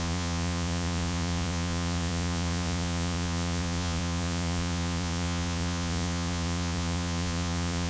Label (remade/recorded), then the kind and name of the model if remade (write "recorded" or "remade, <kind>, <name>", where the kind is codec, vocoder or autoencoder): remade, vocoder, Vocos